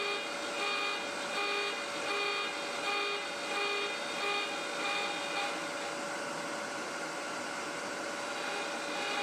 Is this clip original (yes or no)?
yes